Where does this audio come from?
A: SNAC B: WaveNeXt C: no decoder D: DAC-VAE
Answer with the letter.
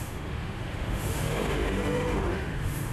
D